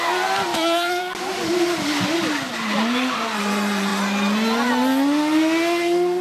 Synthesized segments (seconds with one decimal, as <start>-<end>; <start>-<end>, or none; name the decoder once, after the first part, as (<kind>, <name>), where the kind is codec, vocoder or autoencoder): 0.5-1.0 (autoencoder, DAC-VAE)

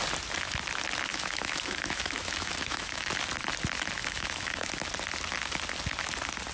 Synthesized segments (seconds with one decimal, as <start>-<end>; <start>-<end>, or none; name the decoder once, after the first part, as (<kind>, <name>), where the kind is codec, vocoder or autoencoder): 1.1-3.1 (autoencoder, DAC-VAE); 4.0-4.7

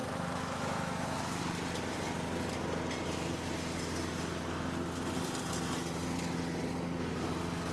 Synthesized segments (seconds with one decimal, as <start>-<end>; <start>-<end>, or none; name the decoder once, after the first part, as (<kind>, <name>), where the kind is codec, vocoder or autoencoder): 0.0-1.4 (autoencoder, DAC-VAE)